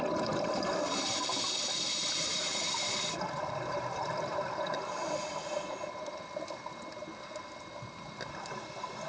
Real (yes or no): no